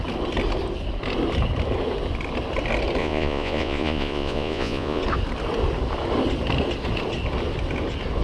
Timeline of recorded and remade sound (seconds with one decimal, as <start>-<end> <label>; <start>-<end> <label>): 0.0-3.0 recorded; 3.0-5.0 remade; 5.0-8.2 recorded